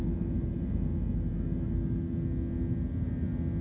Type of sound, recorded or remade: recorded